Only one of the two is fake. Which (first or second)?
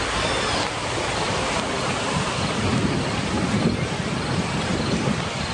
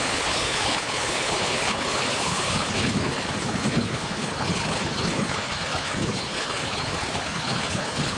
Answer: second